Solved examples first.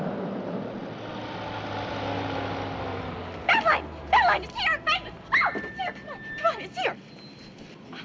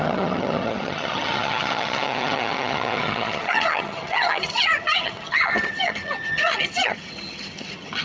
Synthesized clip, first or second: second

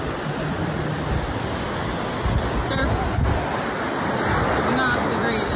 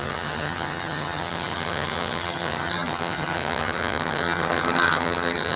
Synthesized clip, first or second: second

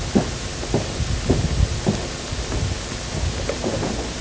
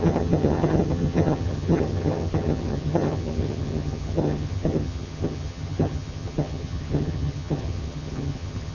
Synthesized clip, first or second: second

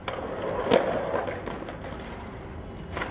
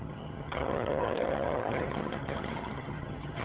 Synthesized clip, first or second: second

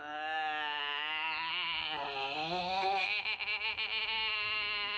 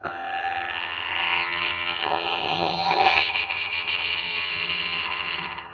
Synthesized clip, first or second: second